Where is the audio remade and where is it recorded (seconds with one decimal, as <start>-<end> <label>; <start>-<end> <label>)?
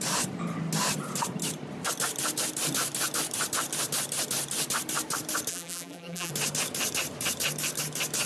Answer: 0.0-5.5 recorded; 5.5-6.3 remade; 6.3-8.3 recorded